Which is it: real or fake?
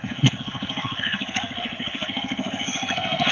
fake